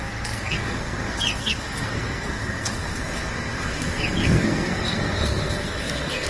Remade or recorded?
remade